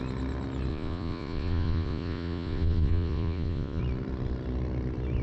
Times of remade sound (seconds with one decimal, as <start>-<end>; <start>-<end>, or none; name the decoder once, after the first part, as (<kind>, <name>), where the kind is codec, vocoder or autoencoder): 0.7-3.8 (vocoder, Vocos)